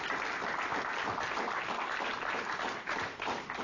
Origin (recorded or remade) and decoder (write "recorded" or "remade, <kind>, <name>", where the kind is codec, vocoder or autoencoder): remade, vocoder, BigVGAN v2